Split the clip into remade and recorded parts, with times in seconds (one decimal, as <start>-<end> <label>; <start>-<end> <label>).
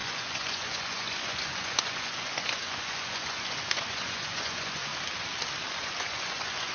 0.0-4.9 remade; 4.9-5.7 recorded; 5.7-6.7 remade